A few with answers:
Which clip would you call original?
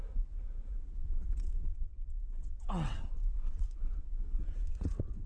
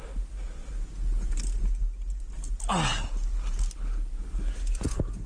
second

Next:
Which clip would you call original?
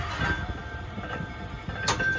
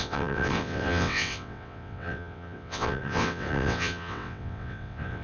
first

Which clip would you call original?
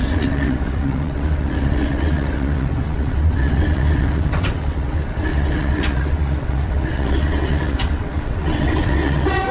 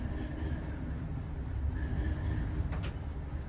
second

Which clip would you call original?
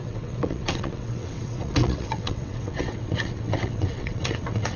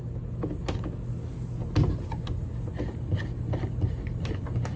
second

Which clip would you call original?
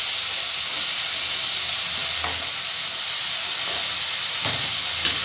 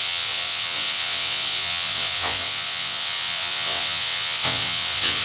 first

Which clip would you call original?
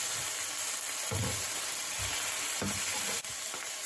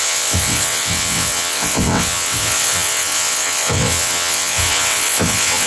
first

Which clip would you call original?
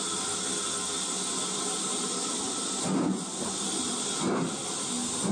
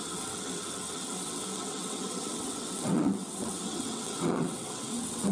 first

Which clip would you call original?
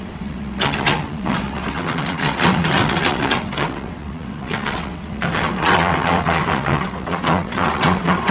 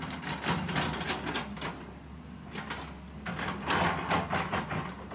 second